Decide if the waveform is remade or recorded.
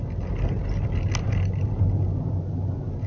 recorded